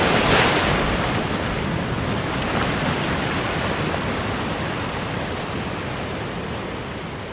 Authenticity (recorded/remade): recorded